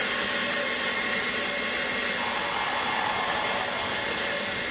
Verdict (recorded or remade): recorded